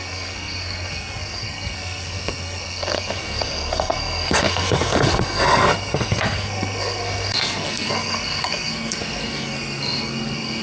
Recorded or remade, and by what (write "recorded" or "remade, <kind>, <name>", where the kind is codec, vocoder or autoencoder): remade, codec, SNAC